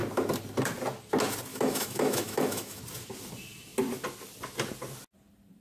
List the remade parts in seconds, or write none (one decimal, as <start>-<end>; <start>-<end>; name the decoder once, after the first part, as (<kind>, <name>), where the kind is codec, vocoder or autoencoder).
1.5-2.8 (autoencoder, DAC-VAE)